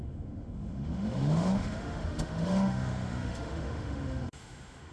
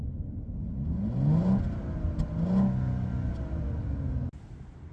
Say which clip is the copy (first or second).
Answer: first